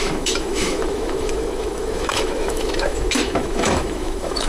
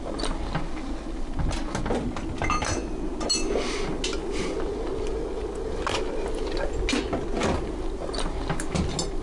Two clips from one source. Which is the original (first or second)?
second